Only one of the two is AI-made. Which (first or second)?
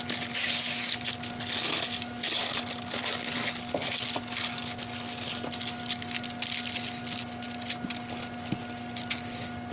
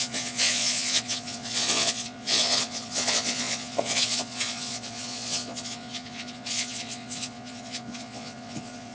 second